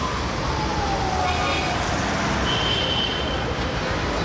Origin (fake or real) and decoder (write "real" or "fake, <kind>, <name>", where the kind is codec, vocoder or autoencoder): real